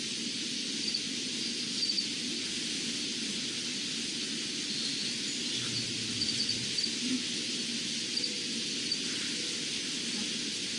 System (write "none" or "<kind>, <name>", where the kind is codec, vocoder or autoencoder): none